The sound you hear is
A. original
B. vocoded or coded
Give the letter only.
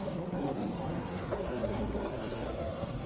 B